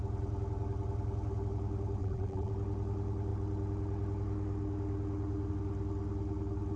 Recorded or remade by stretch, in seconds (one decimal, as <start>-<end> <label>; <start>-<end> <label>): 0.0-2.0 recorded; 2.0-2.5 remade; 2.5-6.8 recorded